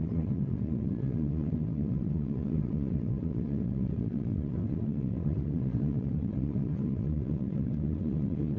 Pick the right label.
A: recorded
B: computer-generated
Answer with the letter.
B